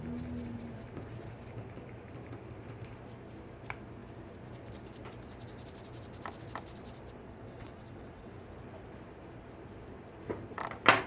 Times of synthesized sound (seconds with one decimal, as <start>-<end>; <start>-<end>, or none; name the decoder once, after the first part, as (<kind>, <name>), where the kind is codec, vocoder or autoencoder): 7.2-8.3 (vocoder, WaveNeXt)